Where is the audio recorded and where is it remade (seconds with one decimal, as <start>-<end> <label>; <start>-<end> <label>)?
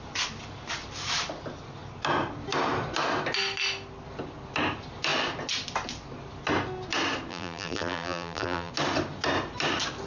0.0-7.3 recorded; 7.3-8.7 remade; 8.7-10.1 recorded